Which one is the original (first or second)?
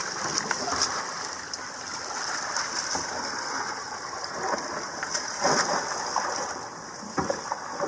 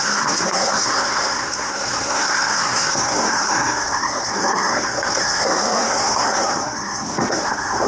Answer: first